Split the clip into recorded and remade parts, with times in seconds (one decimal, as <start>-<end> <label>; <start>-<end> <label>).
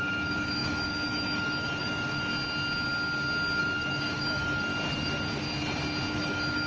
0.0-2.3 remade; 2.3-3.6 recorded; 3.6-4.7 remade; 4.7-6.1 recorded; 6.1-6.7 remade